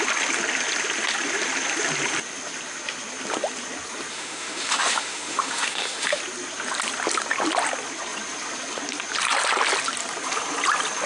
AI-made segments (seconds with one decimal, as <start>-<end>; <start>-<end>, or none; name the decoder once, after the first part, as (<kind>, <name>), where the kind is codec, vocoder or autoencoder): 4.1-6.2 (autoencoder, DAC-VAE)

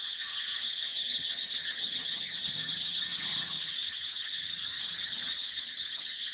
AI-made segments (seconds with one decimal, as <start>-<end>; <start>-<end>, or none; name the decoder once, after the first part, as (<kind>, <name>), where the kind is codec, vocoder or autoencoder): 0.0-6.3 (vocoder, HiFi-GAN)

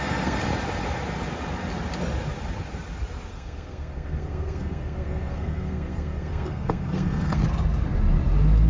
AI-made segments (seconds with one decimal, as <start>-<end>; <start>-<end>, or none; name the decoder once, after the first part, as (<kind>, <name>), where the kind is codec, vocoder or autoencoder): 0.0-0.4 (codec, SNAC); 3.3-7.4

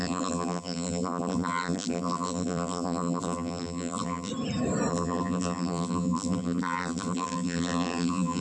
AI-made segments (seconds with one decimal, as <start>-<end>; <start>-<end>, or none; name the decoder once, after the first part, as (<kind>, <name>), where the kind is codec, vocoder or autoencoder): 0.0-4.3 (vocoder, BigVGAN v2); 4.9-8.4

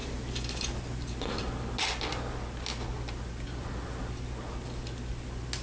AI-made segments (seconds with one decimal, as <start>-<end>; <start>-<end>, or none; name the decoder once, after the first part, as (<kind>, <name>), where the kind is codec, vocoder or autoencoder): none

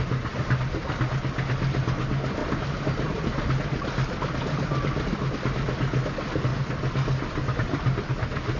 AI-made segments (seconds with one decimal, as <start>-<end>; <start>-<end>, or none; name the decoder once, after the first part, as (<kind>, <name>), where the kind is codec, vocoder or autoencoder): 2.4-5.3 (vocoder, BigVGAN v2); 6.5-8.1

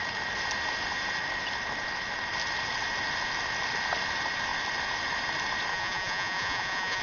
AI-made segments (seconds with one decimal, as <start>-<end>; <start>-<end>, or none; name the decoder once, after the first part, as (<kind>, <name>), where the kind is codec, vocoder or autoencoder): 5.7-7.0 (vocoder, Vocos)

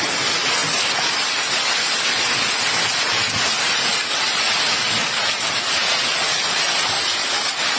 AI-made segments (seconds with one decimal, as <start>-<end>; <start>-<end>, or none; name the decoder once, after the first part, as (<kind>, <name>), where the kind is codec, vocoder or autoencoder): none